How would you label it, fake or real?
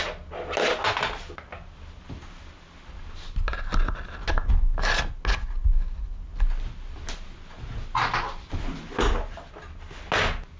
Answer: real